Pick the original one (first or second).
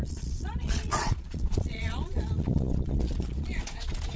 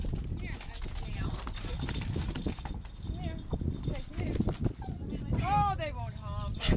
second